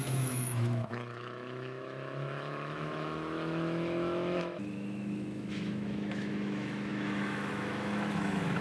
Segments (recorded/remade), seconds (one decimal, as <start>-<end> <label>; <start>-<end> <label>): 0.0-8.6 remade